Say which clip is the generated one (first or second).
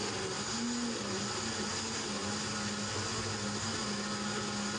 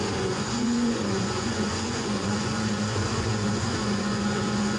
second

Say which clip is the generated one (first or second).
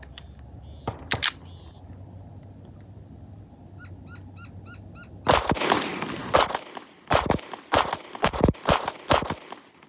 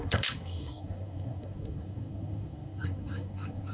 second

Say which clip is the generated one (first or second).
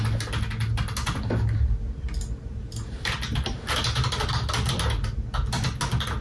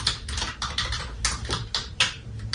second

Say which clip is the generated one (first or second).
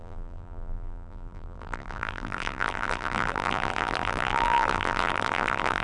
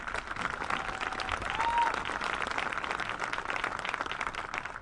first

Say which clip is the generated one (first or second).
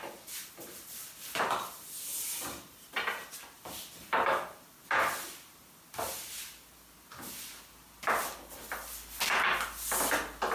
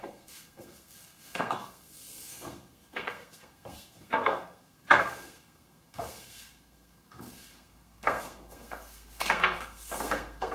second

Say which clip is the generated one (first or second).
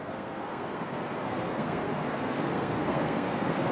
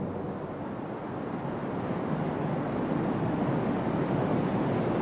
first